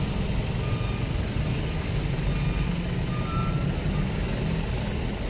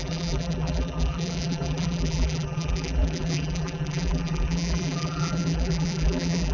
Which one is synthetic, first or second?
second